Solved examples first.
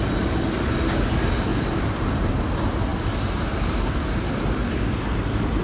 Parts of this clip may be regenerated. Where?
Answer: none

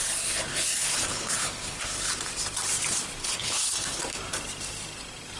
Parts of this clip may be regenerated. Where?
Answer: 0.5-2.1 (codec, HILCodec); 3.2-4.0